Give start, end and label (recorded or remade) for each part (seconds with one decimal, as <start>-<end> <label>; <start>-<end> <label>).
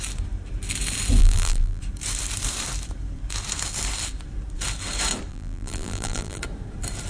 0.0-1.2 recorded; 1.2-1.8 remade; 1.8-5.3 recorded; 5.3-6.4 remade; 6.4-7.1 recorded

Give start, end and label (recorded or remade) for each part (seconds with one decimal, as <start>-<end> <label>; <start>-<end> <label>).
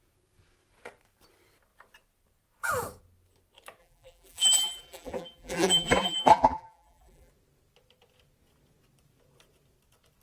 0.0-3.8 recorded; 3.8-7.3 remade; 7.3-10.2 recorded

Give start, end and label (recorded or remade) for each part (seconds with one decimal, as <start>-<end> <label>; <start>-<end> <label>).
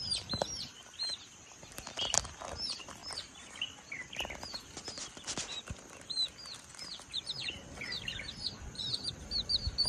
0.0-9.9 remade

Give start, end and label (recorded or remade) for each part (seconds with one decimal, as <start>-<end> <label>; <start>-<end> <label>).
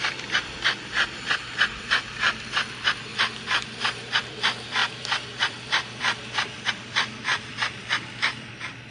0.0-3.1 remade; 3.1-4.2 recorded; 4.2-8.9 remade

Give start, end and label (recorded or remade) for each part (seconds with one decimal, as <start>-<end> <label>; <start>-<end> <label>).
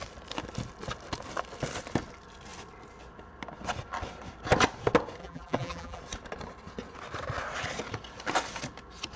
0.0-5.2 recorded; 5.2-6.0 remade; 6.0-9.2 recorded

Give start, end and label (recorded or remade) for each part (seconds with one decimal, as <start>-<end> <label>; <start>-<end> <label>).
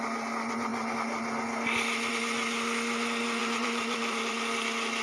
0.0-3.4 recorded; 3.4-4.4 remade; 4.4-5.0 recorded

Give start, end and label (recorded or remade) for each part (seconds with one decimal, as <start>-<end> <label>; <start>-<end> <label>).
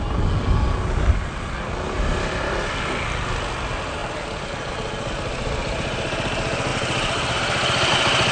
0.0-6.7 recorded; 6.7-7.9 remade; 7.9-8.3 recorded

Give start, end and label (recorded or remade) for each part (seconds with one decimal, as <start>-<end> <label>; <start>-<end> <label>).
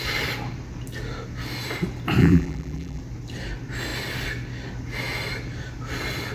0.0-2.2 recorded; 2.2-3.0 remade; 3.0-6.3 recorded